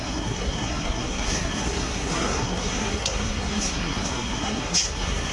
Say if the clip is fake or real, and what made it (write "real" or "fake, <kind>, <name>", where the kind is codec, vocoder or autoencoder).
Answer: fake, codec, SNAC